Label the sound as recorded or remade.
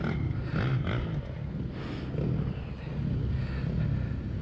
recorded